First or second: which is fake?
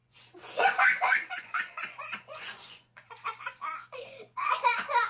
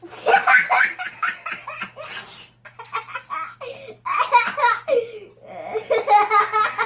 first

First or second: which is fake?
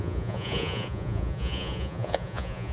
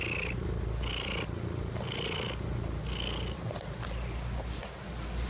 first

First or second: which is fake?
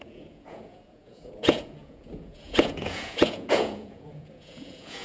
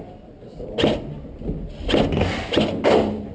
first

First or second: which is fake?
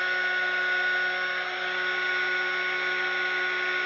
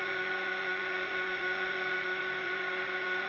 second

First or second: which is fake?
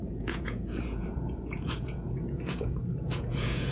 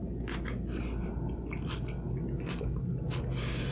first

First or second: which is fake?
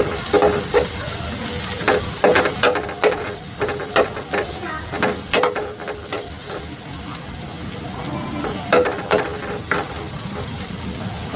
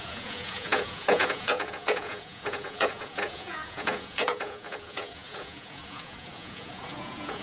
second